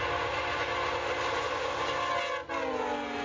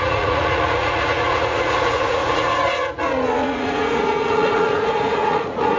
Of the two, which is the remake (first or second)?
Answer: second